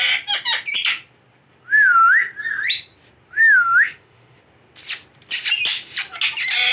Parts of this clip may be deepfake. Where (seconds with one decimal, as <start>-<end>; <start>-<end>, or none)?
3.4-4.4